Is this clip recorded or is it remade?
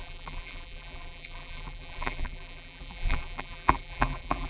remade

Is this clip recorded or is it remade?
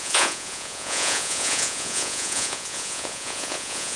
remade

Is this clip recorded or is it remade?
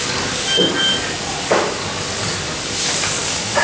remade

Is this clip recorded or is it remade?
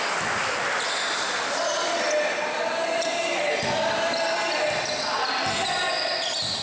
recorded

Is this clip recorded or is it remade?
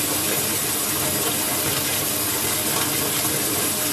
recorded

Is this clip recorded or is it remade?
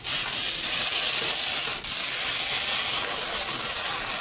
recorded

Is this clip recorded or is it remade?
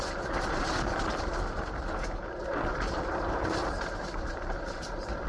remade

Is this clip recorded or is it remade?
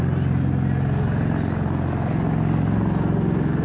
recorded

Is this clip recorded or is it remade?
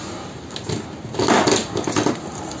recorded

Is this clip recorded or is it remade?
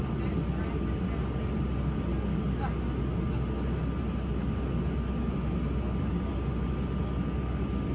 recorded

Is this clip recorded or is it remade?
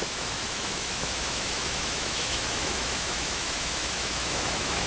remade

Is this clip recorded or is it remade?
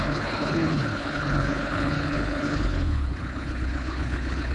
remade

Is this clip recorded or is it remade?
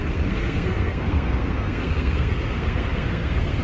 remade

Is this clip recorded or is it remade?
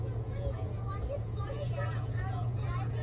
remade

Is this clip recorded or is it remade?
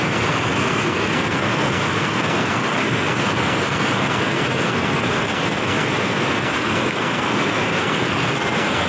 remade